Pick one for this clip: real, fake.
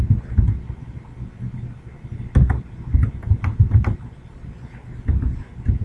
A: real